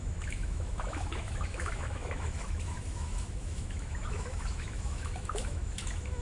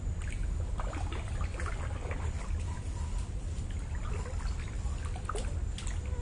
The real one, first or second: second